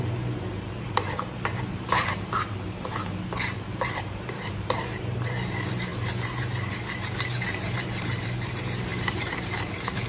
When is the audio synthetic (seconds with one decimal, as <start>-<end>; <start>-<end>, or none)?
0.0-10.1